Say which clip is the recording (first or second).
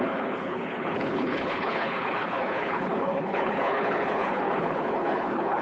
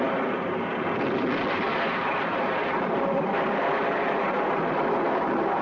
second